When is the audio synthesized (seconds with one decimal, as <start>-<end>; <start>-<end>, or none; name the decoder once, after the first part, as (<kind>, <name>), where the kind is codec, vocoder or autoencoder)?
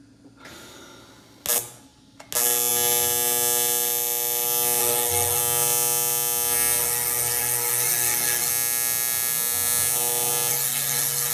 4.8-5.4 (codec, SNAC); 6.8-8.5; 10.5-11.3